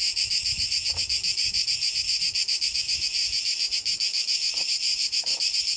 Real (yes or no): no